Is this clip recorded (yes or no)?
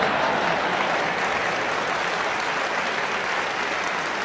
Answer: yes